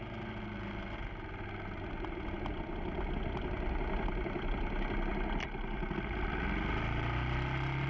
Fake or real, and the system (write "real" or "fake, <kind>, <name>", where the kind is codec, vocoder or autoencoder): real